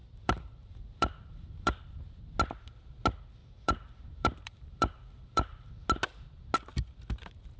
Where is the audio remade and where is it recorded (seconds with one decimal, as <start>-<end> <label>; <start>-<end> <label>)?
0.0-1.8 remade; 1.8-3.4 recorded; 3.4-5.7 remade; 5.7-7.6 recorded